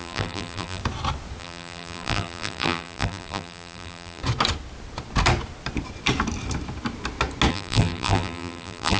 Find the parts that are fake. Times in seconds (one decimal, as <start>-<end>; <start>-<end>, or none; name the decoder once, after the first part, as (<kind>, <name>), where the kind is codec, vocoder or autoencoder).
0.0-0.8 (vocoder, BigVGAN v2); 1.4-4.2; 7.5-9.0